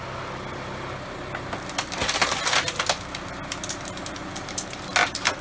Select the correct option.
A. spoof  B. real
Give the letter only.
B